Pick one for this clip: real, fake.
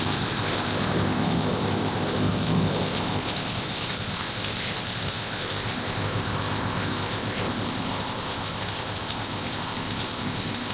fake